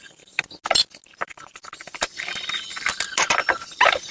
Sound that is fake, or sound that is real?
real